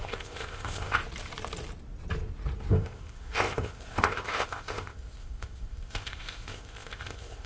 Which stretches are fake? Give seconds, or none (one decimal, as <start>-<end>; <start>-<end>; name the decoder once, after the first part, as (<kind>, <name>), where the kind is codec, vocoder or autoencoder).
0.0-1.0 (codec, ZipCodec); 2.7-7.5